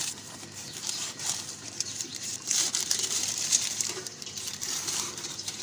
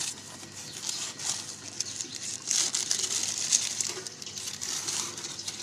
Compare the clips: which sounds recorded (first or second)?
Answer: second